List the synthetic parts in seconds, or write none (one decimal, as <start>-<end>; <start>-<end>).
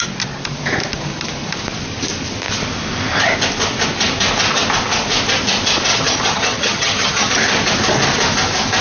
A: 5.9-7.3